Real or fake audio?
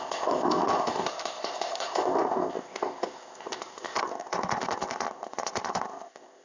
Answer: fake